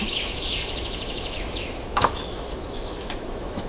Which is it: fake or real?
fake